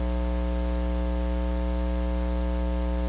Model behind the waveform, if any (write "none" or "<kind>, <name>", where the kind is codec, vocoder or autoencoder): none